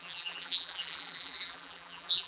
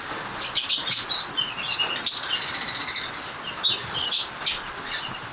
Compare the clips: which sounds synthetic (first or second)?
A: first